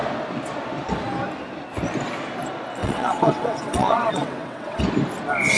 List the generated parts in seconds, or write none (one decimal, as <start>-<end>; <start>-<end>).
2.8-4.8